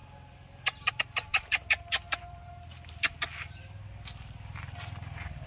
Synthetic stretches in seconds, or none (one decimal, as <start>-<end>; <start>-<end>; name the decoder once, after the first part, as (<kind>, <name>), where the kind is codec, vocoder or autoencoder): none